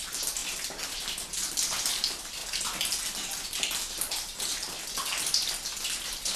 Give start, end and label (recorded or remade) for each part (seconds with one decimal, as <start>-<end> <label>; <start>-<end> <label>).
0.0-6.4 recorded